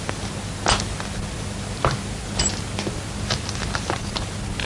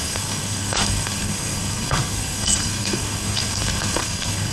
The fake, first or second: second